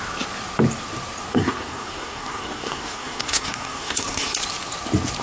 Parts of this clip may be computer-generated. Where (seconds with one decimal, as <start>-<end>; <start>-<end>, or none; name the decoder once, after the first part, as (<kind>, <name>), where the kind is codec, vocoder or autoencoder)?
1.3-4.4 (codec, SNAC)